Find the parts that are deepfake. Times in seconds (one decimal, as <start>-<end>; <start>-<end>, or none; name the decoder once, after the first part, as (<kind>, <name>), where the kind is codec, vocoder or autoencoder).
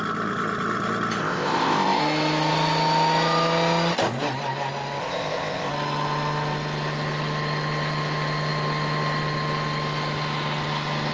1.2-2.0 (codec, ZipCodec); 5.0-5.7